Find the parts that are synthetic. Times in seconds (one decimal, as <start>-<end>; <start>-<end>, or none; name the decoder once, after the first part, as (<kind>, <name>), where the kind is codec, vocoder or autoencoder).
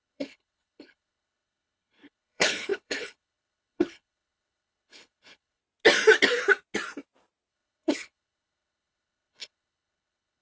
0.0-5.6 (codec, HILCodec); 7.5-10.4